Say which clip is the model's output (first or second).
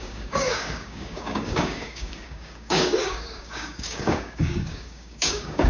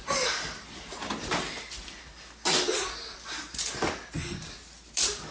first